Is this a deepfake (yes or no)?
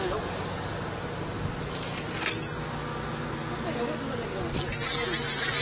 no